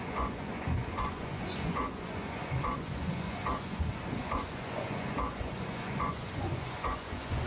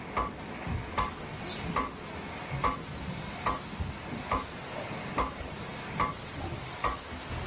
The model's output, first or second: first